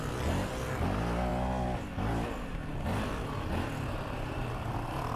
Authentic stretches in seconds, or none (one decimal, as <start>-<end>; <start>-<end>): 0.0-5.2